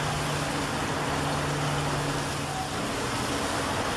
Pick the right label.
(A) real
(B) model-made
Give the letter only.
A